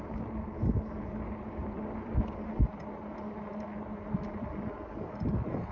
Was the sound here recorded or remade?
recorded